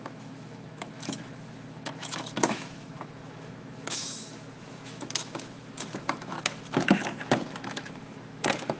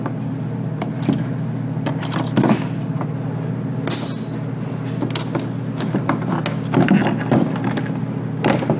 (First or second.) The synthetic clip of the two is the first